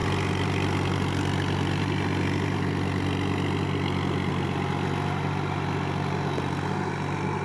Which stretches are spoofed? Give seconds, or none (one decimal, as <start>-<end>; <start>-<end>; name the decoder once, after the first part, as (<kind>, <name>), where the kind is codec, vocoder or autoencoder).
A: none